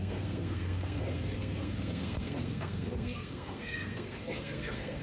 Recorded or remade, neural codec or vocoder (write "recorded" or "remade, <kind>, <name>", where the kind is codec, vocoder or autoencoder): remade, codec, SNAC